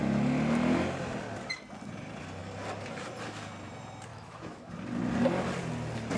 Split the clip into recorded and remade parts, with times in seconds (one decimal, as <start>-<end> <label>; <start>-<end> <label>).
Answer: 0.0-4.1 recorded; 4.1-4.7 remade; 4.7-6.2 recorded